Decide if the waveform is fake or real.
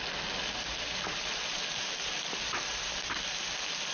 real